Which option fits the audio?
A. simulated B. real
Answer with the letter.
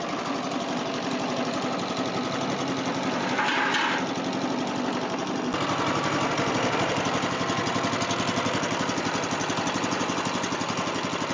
B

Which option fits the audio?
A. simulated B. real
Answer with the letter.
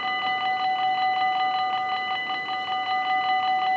B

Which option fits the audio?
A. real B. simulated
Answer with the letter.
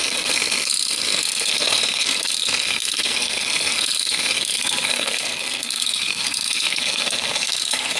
B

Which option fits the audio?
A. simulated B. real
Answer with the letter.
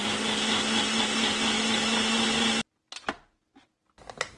B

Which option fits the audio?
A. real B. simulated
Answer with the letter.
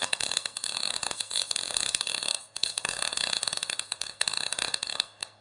B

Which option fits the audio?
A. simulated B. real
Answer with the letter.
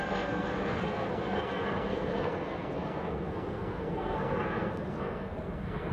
A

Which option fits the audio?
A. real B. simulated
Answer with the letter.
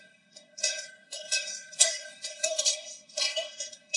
B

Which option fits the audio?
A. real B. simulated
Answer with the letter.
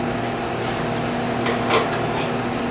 A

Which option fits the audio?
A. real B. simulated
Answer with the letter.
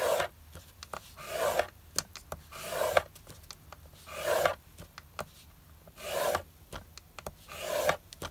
A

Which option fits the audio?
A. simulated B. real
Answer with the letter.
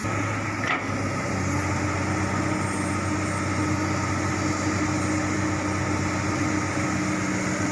B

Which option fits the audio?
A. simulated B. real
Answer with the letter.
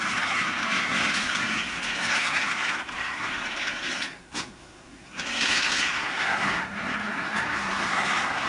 A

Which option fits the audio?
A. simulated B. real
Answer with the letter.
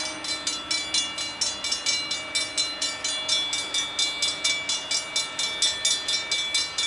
B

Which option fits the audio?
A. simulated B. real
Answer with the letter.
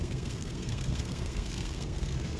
A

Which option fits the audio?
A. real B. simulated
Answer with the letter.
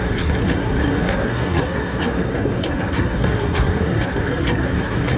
B